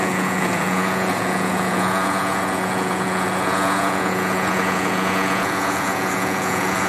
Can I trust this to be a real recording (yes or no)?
no